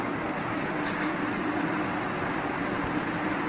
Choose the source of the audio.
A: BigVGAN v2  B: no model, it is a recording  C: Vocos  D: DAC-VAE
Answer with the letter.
B